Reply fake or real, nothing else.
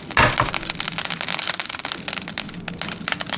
real